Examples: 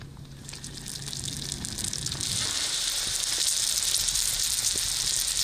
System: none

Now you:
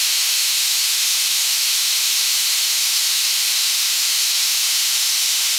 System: autoencoder, DAC-VAE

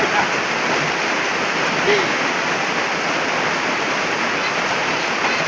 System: none